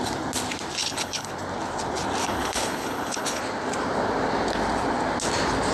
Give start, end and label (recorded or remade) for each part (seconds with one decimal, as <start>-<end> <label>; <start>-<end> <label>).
0.0-0.8 recorded; 0.8-1.3 remade; 1.3-2.2 recorded; 2.2-3.4 remade; 3.4-5.7 recorded